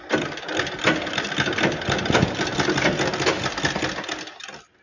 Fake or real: real